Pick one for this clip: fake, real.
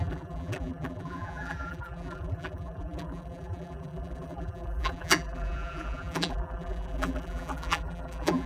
fake